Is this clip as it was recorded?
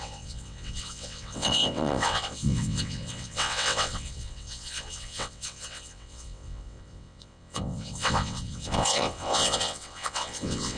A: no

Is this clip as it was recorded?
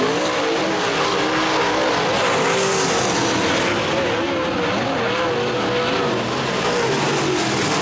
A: yes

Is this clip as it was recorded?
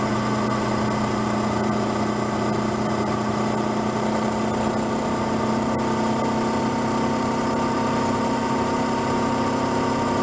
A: yes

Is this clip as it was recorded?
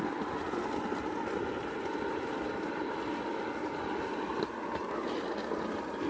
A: yes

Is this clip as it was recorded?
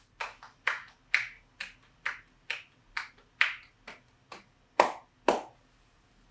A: yes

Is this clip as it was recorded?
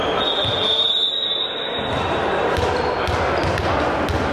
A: yes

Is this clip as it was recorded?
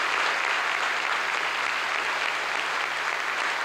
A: yes